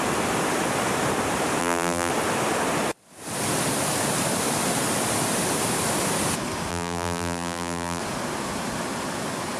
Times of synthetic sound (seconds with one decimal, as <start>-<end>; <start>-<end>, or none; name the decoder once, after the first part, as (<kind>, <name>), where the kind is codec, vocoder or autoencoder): 1.6-2.1 (vocoder, BigVGAN v2); 6.7-8.0